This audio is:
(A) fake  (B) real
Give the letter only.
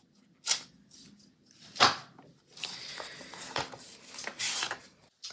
B